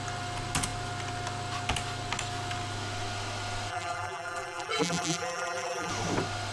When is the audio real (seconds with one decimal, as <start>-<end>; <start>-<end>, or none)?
0.0-3.7; 5.9-6.5